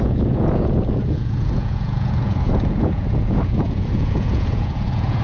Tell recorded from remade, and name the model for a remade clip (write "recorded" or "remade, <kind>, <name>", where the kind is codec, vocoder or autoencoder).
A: remade, vocoder, Vocos